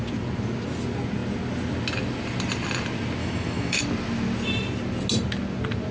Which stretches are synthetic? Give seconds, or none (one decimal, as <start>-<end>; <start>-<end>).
3.2-3.8